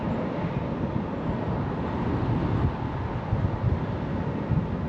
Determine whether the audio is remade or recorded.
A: recorded